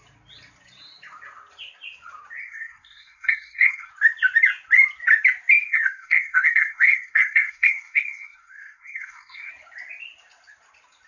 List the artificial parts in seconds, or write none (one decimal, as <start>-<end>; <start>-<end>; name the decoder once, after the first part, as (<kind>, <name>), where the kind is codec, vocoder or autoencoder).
2.4-3.9 (codec, SNAC); 5.6-9.5